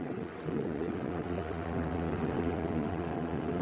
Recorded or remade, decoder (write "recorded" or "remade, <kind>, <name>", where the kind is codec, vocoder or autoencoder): remade, vocoder, WaveNeXt